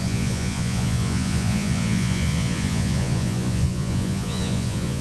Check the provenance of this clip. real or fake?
fake